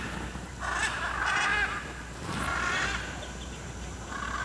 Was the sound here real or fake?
real